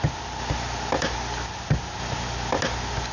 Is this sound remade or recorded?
recorded